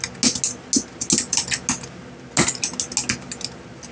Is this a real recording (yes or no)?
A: yes